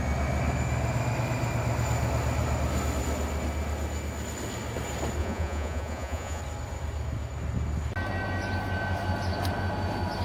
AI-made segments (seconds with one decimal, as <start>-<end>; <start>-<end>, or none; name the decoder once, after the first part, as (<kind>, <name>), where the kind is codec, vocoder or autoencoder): 5.2-6.4 (vocoder, Vocos)